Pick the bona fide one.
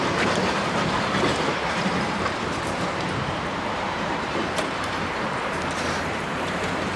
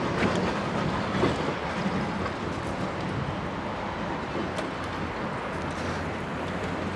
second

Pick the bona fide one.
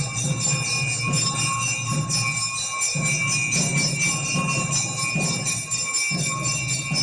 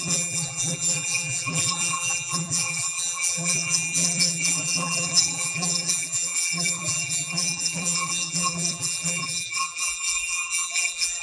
first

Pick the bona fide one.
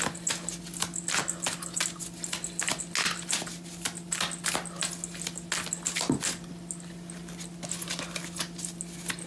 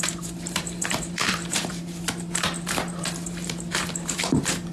first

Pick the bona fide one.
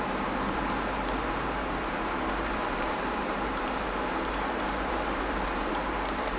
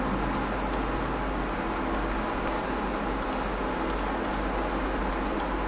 second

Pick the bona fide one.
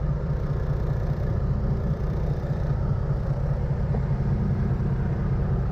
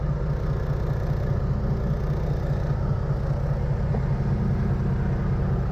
second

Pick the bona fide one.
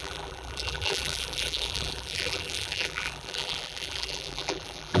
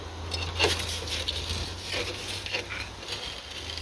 second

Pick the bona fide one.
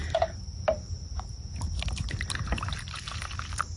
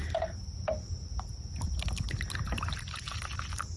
second